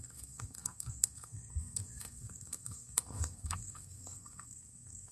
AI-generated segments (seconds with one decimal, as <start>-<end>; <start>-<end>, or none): 0.0-5.1